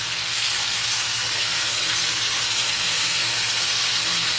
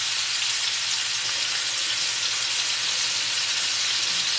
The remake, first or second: first